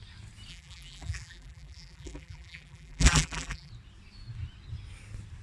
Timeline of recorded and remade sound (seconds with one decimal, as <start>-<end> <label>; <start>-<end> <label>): 0.0-0.5 recorded; 0.5-3.7 remade; 3.7-5.4 recorded